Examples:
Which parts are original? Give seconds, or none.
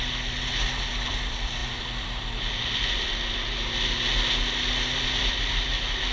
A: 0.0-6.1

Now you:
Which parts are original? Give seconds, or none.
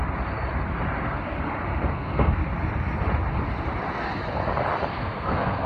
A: 0.0-1.9; 2.4-4.9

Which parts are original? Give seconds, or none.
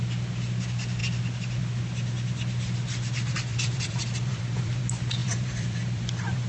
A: 0.0-3.5; 4.8-5.2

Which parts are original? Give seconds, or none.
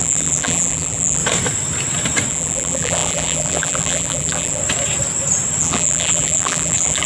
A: 1.2-2.3; 4.6-5.6